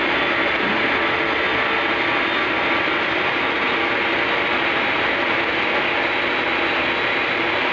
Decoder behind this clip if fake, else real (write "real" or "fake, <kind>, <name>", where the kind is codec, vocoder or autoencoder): real